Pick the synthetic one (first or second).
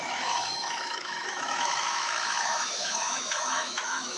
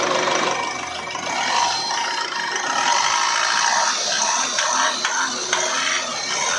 first